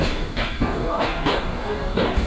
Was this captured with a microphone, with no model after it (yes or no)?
no